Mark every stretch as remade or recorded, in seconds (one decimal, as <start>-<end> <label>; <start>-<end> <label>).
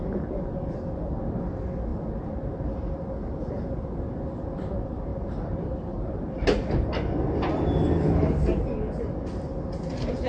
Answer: 0.0-5.1 recorded; 5.1-6.2 remade; 6.2-10.3 recorded